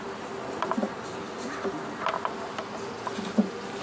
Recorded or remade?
recorded